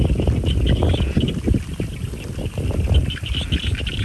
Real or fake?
real